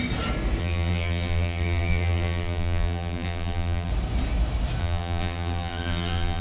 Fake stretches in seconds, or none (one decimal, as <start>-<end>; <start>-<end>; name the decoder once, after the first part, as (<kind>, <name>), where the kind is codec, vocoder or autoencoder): 0.6-3.9 (vocoder, BigVGAN v2); 4.8-6.4